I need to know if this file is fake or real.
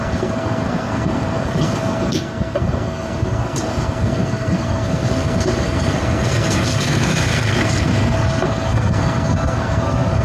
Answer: fake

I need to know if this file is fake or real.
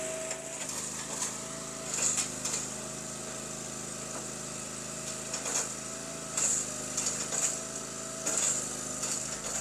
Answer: real